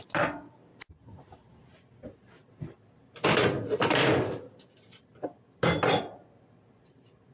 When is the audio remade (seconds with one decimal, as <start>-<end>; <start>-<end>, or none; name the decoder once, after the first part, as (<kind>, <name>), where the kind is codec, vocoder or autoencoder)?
none